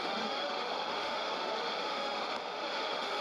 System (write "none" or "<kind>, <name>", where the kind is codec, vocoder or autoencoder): autoencoder, DAC-VAE